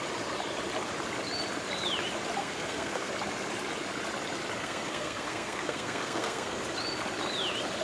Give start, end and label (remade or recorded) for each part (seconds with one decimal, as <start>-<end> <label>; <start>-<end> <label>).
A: 0.0-2.4 recorded; 2.4-3.1 remade; 3.1-4.6 recorded; 4.6-6.6 remade; 6.6-7.8 recorded